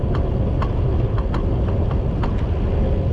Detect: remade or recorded recorded